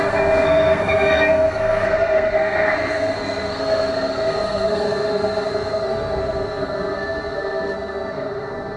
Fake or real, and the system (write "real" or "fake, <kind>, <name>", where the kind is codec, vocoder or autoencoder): fake, codec, SNAC